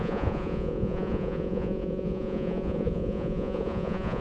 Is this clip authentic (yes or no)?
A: no